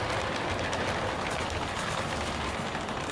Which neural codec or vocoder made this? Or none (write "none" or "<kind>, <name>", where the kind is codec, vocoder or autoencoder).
none